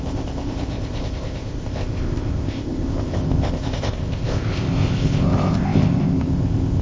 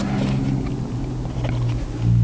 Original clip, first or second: second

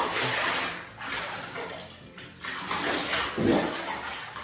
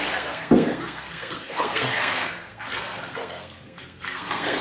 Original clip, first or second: first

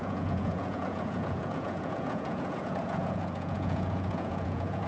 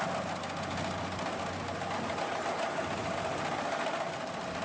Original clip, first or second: second